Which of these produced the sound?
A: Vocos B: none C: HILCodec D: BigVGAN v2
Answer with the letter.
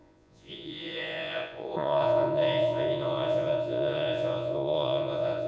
A